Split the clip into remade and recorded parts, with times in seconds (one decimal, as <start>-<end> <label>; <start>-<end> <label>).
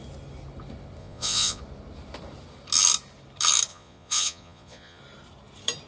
0.0-1.0 recorded; 1.0-1.6 remade; 1.6-3.7 recorded; 3.7-5.0 remade; 5.0-5.9 recorded